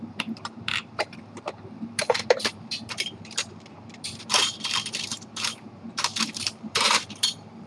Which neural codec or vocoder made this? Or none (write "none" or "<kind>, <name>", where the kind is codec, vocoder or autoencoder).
vocoder, BigVGAN v2